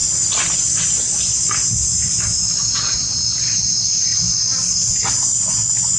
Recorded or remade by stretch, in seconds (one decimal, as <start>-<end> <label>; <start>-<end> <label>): 0.0-3.6 remade; 3.6-4.1 recorded; 4.1-4.9 remade; 4.9-6.0 recorded